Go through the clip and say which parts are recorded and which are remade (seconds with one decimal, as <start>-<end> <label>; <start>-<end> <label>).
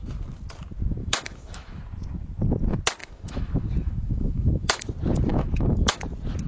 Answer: 0.0-1.0 recorded; 1.0-1.8 remade; 1.8-3.0 recorded; 3.0-4.8 remade; 4.8-5.3 recorded; 5.3-6.0 remade; 6.0-6.5 recorded